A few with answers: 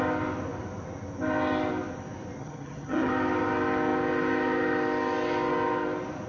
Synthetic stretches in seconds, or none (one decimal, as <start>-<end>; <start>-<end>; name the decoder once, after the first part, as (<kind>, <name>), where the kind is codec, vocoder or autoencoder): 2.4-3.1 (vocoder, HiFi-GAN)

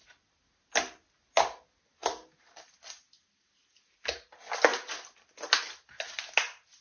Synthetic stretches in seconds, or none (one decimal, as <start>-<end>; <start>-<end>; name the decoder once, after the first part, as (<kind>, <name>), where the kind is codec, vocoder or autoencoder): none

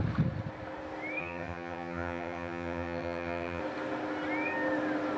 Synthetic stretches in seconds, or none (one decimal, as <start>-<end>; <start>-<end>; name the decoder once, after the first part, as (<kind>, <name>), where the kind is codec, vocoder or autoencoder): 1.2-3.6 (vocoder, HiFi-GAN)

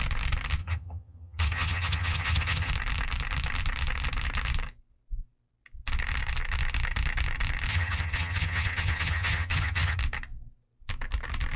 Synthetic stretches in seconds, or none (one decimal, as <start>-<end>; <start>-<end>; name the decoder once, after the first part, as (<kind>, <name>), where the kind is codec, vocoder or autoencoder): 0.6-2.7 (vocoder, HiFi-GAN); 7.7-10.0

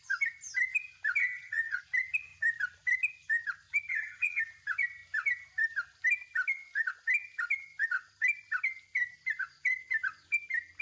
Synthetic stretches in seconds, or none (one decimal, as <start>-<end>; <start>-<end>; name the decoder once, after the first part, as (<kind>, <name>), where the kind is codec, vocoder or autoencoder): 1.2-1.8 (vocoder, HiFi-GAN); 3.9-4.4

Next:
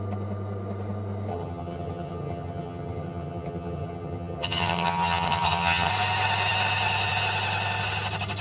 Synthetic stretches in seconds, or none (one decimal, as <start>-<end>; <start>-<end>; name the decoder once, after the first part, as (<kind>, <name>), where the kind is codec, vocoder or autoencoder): 1.3-5.9 (vocoder, HiFi-GAN)

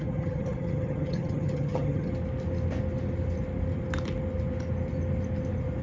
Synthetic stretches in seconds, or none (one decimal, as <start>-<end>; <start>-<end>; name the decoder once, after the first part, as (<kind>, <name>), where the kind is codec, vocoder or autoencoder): 0.0-2.1 (vocoder, HiFi-GAN)